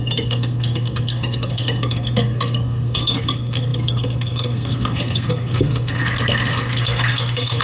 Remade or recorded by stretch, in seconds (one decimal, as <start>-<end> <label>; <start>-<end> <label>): 0.0-7.6 remade